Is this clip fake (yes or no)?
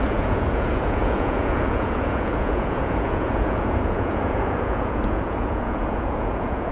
yes